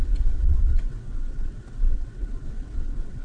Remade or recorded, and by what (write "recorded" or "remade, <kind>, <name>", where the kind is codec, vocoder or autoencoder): remade, vocoder, WaveNeXt